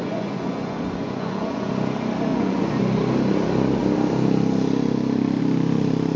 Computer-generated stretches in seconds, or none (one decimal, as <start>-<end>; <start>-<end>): 0.0-1.7; 2.3-2.8